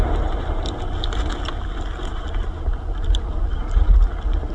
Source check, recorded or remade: recorded